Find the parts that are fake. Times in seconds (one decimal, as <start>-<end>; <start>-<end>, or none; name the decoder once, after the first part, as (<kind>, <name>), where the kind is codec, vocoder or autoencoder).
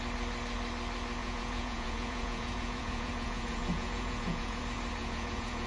1.2-4.6 (vocoder, Vocos); 5.0-5.7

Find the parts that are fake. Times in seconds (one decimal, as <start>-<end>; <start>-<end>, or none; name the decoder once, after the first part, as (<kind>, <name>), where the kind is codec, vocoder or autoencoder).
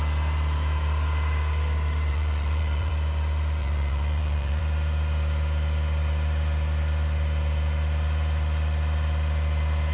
2.1-2.9 (vocoder, Vocos); 3.6-4.6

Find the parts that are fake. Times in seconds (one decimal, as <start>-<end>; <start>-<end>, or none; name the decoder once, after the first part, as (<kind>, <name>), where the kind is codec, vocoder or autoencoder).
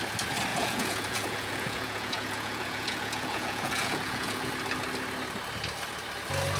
0.5-4.5 (vocoder, Vocos)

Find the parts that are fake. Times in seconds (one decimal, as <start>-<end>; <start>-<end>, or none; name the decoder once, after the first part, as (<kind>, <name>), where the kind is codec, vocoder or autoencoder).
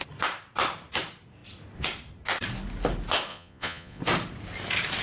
3.3-4.0 (vocoder, Vocos)